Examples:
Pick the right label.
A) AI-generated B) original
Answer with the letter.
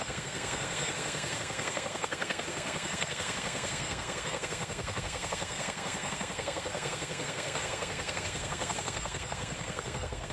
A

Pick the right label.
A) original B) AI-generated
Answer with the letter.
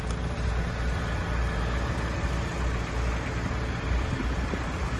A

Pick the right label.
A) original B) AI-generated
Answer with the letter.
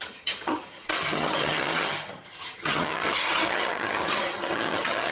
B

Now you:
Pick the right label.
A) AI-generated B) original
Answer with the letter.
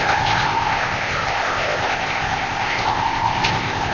A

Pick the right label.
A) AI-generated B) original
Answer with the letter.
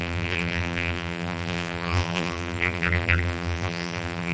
A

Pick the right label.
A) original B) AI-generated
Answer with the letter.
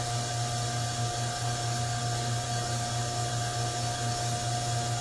A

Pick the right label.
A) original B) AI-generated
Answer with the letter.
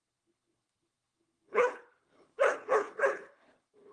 B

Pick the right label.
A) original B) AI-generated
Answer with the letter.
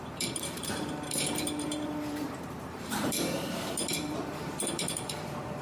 B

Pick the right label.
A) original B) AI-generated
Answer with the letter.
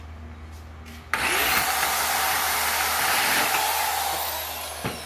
A